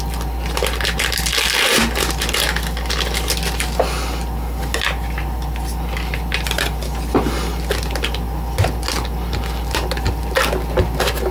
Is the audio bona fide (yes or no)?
yes